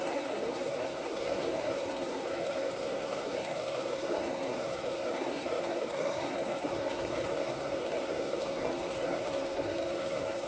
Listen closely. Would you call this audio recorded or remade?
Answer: remade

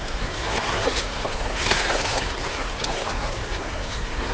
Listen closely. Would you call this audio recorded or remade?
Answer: remade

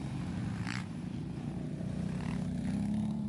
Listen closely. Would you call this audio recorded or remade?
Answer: remade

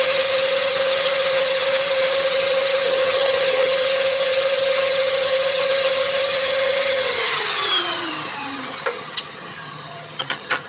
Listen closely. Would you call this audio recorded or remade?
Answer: remade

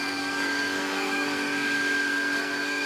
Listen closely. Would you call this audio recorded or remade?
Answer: remade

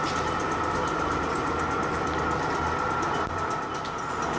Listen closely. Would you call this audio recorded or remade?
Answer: recorded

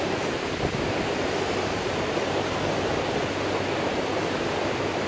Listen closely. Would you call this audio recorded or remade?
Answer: recorded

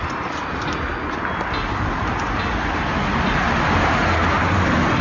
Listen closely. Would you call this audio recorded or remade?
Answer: recorded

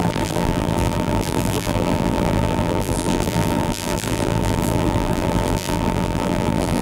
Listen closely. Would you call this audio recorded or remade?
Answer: remade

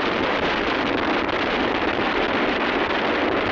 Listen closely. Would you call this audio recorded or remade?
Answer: recorded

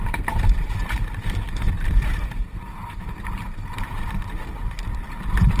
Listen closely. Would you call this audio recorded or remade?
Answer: remade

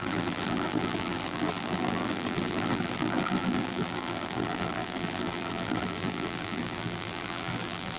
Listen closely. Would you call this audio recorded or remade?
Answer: remade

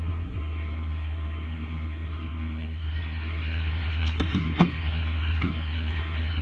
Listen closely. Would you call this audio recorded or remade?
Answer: remade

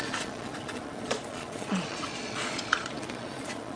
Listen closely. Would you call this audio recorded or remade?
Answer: remade